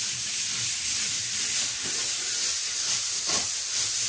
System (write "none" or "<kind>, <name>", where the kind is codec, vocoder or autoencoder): none